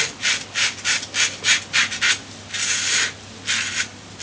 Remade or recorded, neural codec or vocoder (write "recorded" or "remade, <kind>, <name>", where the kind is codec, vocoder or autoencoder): recorded